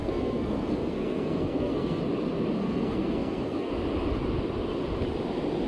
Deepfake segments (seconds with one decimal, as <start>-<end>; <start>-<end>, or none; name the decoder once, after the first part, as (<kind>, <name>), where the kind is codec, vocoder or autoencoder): 0.0-2.0 (codec, SNAC); 2.6-3.7